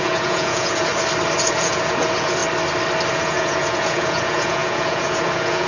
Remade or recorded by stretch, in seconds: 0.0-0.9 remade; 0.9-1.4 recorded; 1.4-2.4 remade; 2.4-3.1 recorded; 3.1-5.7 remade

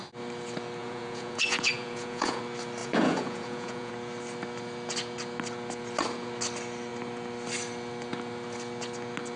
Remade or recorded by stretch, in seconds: 0.0-0.8 recorded; 0.8-2.4 remade; 2.4-2.8 recorded; 2.8-3.9 remade; 3.9-9.4 recorded

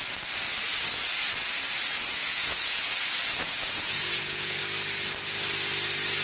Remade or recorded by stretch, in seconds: 0.0-2.2 recorded; 2.2-4.6 remade; 4.6-6.2 recorded

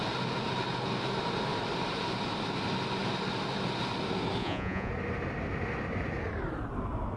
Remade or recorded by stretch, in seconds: 0.0-4.4 recorded; 4.4-4.9 remade; 4.9-7.2 recorded